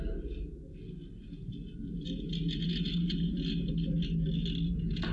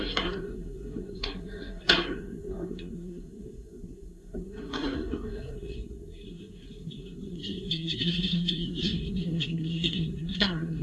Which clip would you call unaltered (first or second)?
first